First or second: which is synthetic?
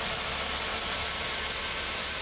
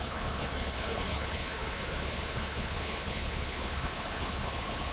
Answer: second